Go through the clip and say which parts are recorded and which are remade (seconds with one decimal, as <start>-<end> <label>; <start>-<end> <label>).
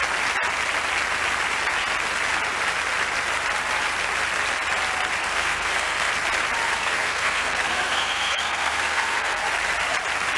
0.0-5.2 recorded; 5.2-6.1 remade; 6.1-6.8 recorded; 6.8-9.4 remade; 9.4-10.4 recorded